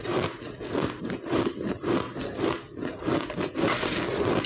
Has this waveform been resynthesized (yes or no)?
no